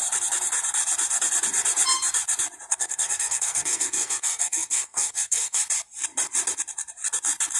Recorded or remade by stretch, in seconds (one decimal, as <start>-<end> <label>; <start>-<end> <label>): 0.0-2.7 recorded; 2.7-5.6 remade; 5.6-7.6 recorded

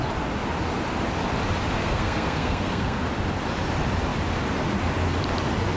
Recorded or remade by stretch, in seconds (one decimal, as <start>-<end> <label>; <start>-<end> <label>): 0.0-1.7 recorded; 1.7-3.0 remade; 3.0-5.8 recorded

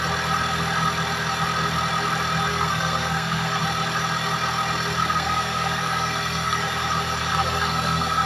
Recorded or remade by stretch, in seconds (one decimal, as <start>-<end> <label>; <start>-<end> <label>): 0.0-2.5 recorded; 2.5-3.6 remade; 3.6-5.0 recorded; 5.0-6.6 remade; 6.6-7.3 recorded; 7.3-8.3 remade

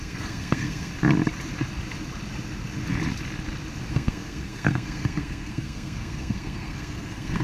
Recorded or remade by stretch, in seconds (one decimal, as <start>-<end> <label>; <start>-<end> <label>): 0.0-0.9 remade; 0.9-3.9 recorded; 3.9-7.4 remade